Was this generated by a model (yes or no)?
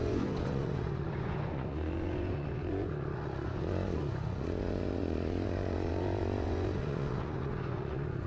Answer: yes